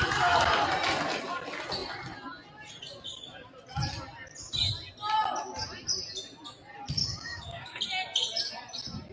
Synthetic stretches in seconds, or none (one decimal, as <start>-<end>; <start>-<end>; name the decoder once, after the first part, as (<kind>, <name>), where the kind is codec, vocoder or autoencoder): 7.0-7.8 (codec, DAC)